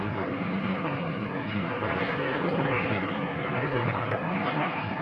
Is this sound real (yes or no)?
no